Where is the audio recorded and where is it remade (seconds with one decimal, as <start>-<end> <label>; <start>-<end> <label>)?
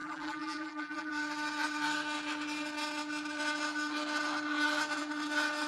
0.0-1.1 remade; 1.1-5.7 recorded